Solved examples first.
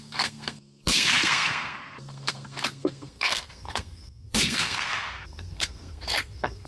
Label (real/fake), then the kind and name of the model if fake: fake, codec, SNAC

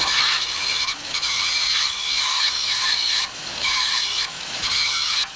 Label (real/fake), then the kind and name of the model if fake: fake, autoencoder, DAC-VAE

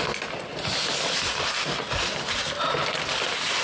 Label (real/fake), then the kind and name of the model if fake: real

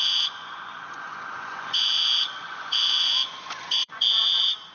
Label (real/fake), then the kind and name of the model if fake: fake, vocoder, Vocos